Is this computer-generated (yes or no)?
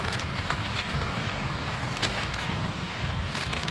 yes